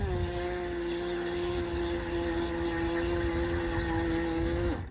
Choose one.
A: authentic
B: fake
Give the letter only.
A